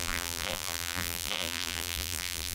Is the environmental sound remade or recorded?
remade